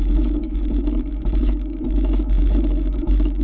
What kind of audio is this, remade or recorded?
remade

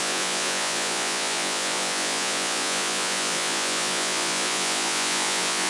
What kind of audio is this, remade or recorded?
remade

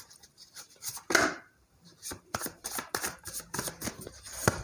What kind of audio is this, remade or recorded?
remade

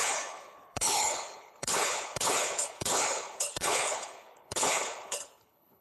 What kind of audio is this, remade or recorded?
remade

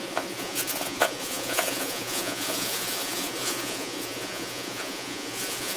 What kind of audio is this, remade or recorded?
remade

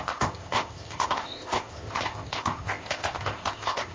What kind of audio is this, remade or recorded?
remade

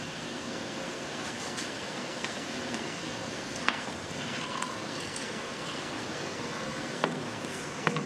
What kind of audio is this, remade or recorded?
remade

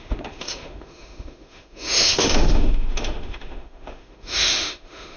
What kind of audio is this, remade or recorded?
remade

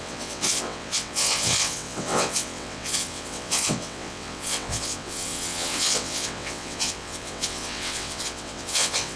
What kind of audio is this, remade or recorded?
remade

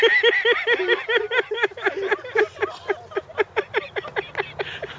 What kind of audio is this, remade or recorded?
recorded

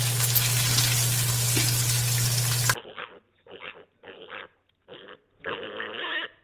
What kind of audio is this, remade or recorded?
recorded